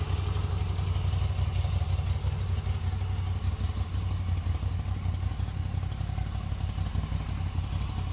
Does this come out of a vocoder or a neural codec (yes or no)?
no